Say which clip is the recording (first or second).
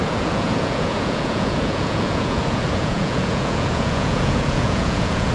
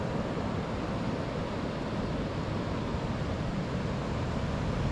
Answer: second